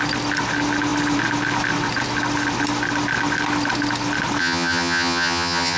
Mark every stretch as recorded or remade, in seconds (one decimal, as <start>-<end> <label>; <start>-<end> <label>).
0.0-4.4 recorded; 4.4-5.8 remade

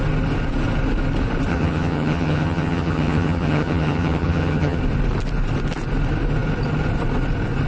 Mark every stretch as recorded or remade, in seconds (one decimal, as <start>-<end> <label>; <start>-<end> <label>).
0.0-1.5 recorded; 1.5-4.8 remade; 4.8-7.7 recorded

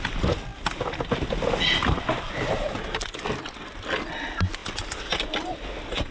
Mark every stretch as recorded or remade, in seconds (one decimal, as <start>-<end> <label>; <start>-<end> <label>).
0.0-6.1 recorded